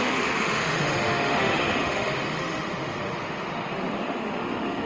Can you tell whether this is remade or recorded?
remade